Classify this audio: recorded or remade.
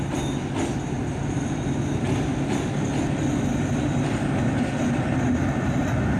recorded